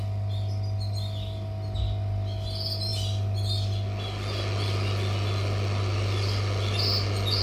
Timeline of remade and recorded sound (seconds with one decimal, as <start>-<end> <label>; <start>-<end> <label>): 0.0-7.4 recorded